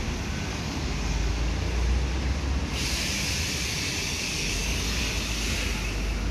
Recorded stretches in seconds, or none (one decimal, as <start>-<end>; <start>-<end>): 0.0-0.5; 1.4-3.9; 5.0-6.3